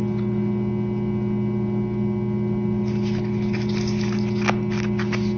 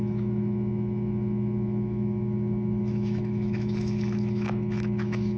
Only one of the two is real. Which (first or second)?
first